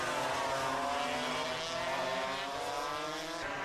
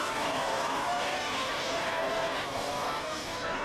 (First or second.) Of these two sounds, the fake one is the second